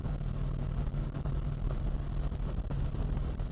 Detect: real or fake real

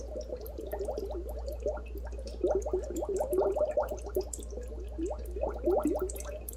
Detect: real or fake real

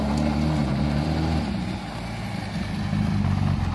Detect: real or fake real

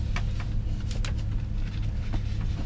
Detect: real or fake real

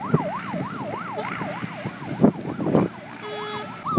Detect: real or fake real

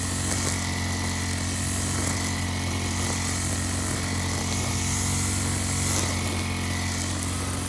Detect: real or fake real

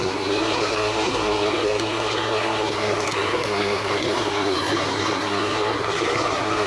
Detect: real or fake fake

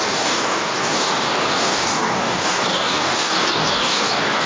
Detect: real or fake fake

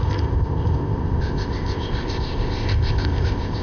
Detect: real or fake fake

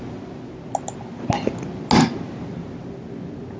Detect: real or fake real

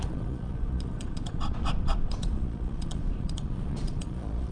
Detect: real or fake fake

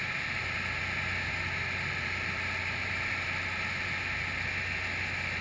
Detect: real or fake real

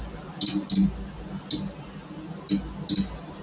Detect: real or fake real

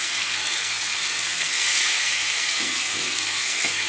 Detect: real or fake fake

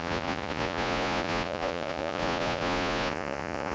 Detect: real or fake fake